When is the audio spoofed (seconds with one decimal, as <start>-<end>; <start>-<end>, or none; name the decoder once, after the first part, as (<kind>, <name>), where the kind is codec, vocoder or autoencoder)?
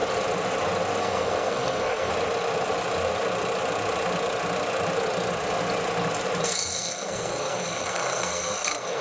1.0-2.1 (codec, SNAC); 6.4-9.0